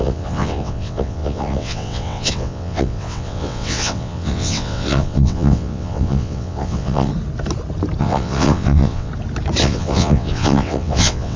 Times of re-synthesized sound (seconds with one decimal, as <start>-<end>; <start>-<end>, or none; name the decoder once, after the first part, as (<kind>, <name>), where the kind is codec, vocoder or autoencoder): 0.0-7.1 (vocoder, WaveNeXt); 8.0-9.1; 9.6-11.4